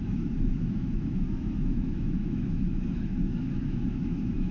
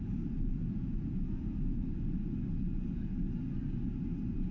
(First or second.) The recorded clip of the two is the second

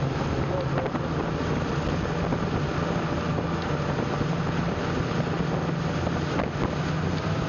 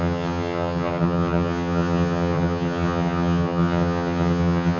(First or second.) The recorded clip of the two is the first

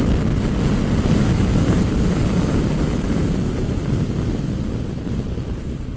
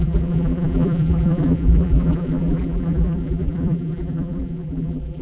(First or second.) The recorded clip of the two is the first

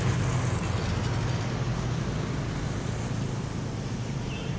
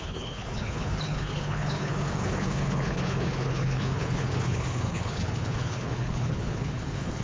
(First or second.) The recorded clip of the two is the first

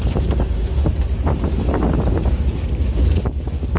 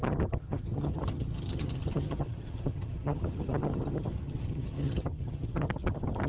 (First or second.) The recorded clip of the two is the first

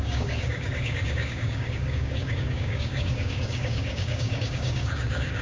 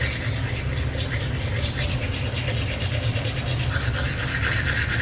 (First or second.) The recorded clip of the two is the second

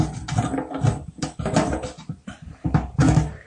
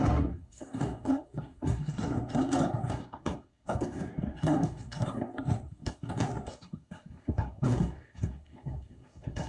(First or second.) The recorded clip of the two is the first